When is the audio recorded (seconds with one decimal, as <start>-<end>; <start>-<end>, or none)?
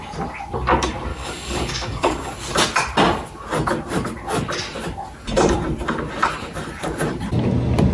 0.0-1.1; 2.3-7.9